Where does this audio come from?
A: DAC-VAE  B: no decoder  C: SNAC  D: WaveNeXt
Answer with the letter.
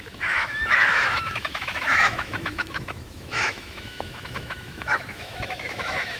A